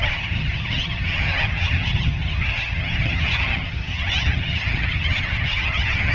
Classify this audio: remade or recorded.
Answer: remade